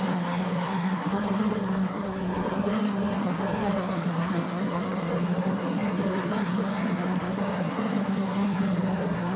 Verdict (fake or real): fake